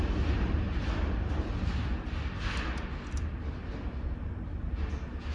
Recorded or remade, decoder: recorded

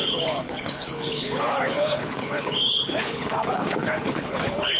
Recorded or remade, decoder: remade, codec, HILCodec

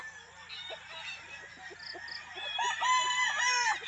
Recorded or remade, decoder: recorded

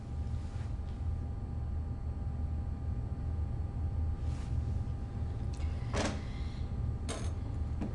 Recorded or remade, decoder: recorded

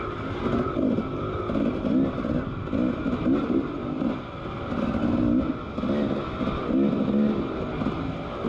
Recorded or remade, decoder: recorded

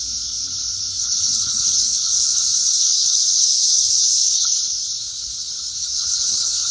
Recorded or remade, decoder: remade, codec, HILCodec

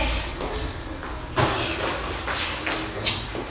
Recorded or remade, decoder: recorded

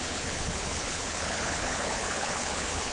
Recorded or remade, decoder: remade, codec, HILCodec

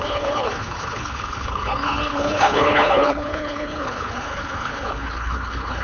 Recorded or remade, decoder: remade, codec, HILCodec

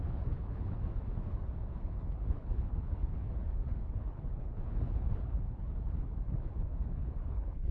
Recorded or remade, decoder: remade, codec, HILCodec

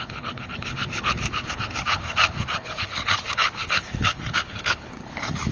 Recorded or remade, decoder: remade, codec, HILCodec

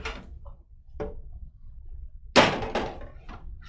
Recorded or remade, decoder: recorded